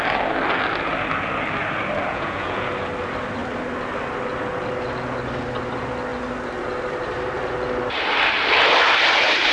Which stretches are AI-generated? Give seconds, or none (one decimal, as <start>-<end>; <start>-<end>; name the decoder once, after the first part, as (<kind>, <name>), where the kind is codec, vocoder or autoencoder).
2.1-2.7 (vocoder, Vocos)